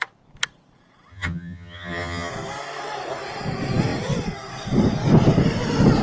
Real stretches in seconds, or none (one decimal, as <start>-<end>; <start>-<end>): 0.0-1.1; 2.3-6.0